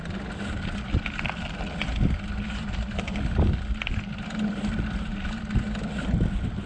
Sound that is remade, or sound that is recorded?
recorded